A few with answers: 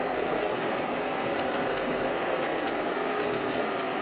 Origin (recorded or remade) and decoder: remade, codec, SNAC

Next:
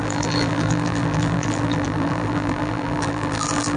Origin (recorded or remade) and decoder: remade, vocoder, BigVGAN v2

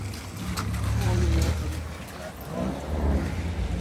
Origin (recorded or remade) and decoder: recorded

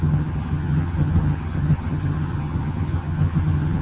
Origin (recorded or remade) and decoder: remade, vocoder, HiFi-GAN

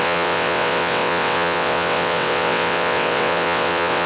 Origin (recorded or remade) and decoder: remade, vocoder, WaveNeXt